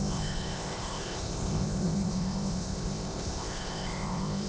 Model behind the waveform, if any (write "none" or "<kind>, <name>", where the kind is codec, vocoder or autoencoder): codec, ZipCodec